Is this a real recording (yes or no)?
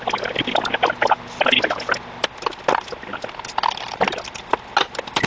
yes